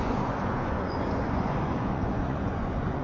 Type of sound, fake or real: fake